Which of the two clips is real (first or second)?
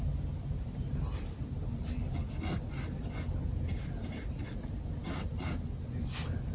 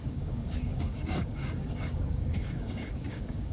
first